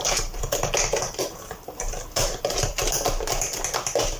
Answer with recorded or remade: remade